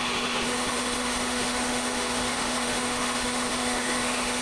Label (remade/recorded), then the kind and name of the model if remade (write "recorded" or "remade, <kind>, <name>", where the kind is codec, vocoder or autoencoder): remade, autoencoder, DAC-VAE